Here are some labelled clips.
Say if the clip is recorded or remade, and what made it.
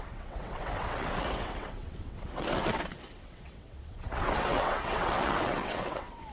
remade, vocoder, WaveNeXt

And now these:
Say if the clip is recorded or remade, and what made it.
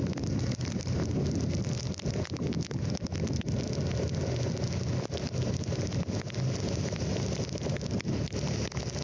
recorded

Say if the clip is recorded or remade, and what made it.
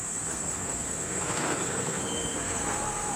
remade, codec, SNAC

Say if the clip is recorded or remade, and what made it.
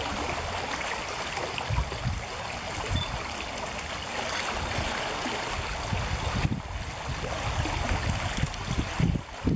recorded